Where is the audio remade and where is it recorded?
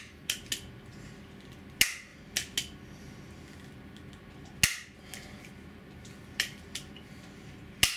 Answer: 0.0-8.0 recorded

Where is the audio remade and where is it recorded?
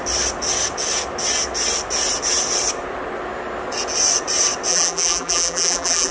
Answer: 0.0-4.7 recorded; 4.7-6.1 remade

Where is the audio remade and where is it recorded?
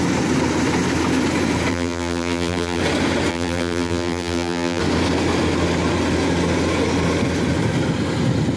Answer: 0.0-1.7 recorded; 1.7-2.8 remade; 2.8-3.3 recorded; 3.3-4.8 remade; 4.8-8.6 recorded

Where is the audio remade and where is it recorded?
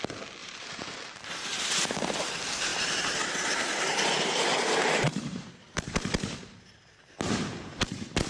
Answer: 0.0-0.4 recorded; 0.4-1.6 remade; 1.6-2.7 recorded; 2.7-3.3 remade; 3.3-3.9 recorded; 3.9-5.5 remade; 5.5-8.3 recorded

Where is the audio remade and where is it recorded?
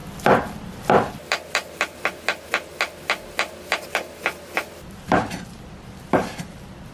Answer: 0.0-6.9 recorded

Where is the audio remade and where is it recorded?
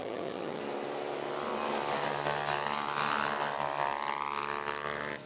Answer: 0.0-0.6 remade; 0.6-5.3 recorded